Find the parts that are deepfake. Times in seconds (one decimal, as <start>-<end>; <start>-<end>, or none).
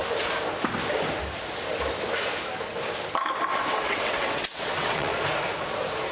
3.7-5.1